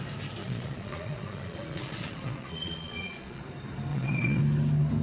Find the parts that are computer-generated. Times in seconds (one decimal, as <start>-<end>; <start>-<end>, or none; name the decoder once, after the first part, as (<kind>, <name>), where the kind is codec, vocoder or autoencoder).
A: 0.4-3.4 (vocoder, Vocos); 3.9-4.4